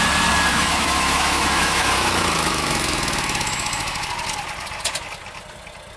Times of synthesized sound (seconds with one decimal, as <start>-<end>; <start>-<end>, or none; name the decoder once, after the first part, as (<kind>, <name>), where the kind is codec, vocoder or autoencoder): 0.5-4.1 (autoencoder, DAC-VAE)

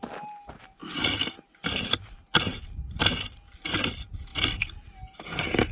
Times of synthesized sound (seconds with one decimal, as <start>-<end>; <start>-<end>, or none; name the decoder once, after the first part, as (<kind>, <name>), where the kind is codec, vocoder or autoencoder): none

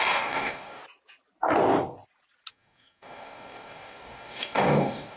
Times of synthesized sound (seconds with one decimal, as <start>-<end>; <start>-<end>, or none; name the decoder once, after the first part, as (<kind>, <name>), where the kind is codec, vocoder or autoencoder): 0.0-0.8 (codec, DAC); 2.5-5.2

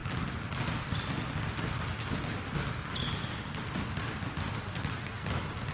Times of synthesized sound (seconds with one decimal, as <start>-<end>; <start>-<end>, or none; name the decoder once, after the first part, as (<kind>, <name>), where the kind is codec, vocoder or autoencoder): 4.7-5.3 (codec, SNAC)

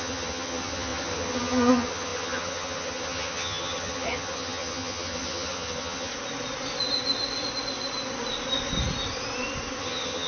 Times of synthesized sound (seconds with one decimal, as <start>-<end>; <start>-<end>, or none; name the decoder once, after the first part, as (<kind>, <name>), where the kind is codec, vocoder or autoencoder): 0.0-6.1 (vocoder, HiFi-GAN); 9.8-10.3